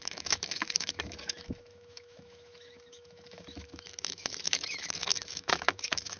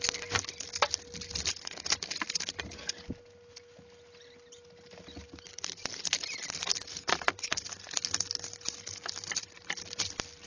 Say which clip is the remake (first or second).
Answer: first